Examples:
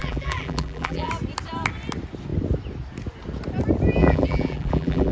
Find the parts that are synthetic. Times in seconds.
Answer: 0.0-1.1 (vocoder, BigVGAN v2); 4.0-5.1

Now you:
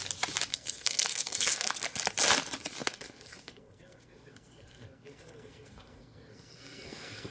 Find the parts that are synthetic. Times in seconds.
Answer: 0.5-1.7 (codec, SNAC); 2.8-7.3

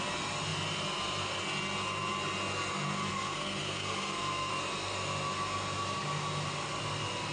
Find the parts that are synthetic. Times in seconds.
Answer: 3.1-4.5 (codec, SNAC)

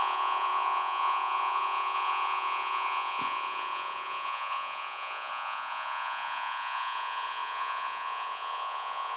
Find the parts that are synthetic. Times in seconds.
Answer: 0.0-9.2 (vocoder, Vocos)

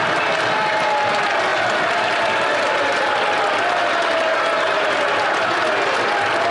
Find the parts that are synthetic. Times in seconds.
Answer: none

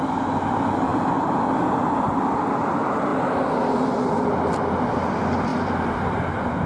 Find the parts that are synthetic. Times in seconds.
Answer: 5.5-6.7 (vocoder, BigVGAN v2)